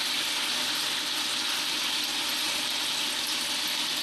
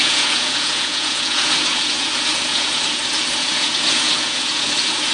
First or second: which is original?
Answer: first